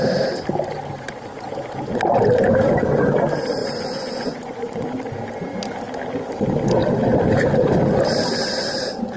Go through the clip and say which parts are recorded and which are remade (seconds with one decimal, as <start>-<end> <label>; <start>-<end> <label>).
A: 0.0-3.6 recorded; 3.6-4.9 remade; 4.9-9.2 recorded